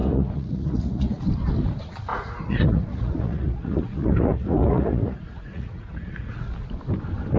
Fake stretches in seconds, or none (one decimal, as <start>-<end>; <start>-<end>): 0.0-1.2; 2.1-6.5